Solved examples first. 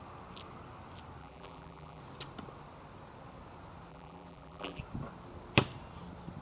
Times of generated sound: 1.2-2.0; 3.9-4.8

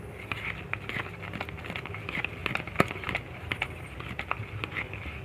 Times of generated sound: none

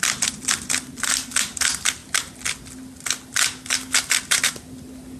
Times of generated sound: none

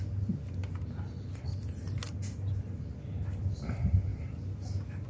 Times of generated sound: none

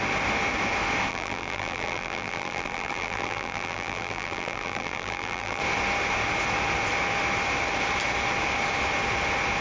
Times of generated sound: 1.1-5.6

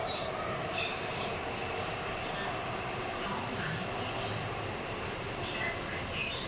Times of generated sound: 0.0-1.4

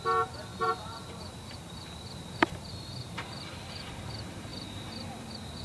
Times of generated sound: 0.0-5.6